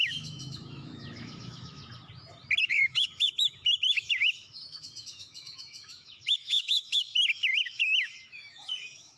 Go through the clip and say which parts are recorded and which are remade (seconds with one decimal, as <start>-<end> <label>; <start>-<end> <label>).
0.0-1.8 remade; 1.8-2.6 recorded; 2.6-9.2 remade